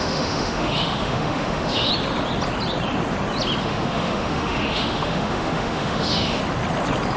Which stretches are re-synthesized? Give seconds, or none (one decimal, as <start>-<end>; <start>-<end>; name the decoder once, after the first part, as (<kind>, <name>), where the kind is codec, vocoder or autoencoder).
0.0-1.9 (autoencoder, DAC-VAE); 3.6-6.4